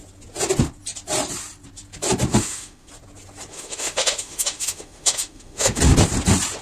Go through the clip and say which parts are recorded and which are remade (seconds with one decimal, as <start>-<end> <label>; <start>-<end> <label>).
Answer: 0.0-2.3 recorded; 2.3-2.9 remade; 2.9-3.5 recorded; 3.5-5.8 remade; 5.8-6.6 recorded